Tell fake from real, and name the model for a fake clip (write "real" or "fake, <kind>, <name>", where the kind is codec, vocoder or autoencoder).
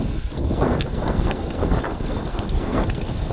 fake, codec, SNAC